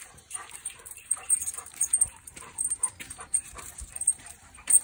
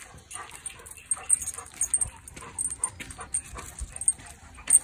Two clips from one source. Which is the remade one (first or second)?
first